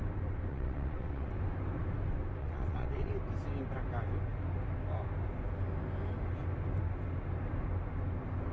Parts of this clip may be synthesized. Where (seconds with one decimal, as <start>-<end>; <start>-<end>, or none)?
0.5-1.3; 2.4-3.1

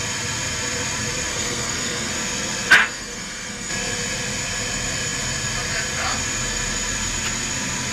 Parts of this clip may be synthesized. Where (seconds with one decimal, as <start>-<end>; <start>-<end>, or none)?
1.3-2.1; 2.8-3.7

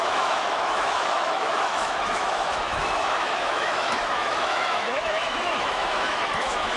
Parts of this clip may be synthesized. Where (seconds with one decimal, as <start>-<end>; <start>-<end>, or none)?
0.0-6.8

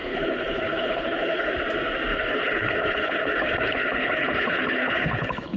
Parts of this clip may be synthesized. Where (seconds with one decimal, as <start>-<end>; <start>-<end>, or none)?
0.0-1.5; 2.1-5.6

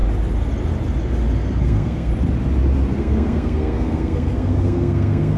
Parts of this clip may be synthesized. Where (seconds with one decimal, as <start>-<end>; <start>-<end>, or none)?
1.6-2.1; 3.0-5.4

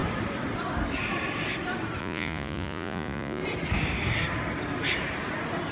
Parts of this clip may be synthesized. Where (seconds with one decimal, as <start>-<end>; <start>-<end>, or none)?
2.0-3.4

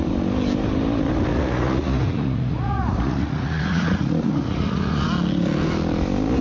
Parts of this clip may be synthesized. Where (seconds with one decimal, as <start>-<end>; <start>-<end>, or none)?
1.3-5.1

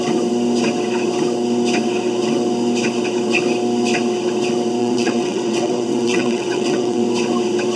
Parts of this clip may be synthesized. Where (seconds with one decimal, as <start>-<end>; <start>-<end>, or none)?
4.8-7.0